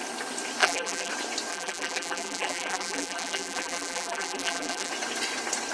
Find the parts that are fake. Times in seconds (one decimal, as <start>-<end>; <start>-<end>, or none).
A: 0.6-1.1; 1.5-4.9